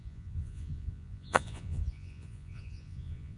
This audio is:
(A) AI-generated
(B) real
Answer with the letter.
A